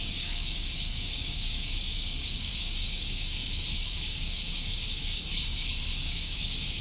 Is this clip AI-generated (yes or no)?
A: yes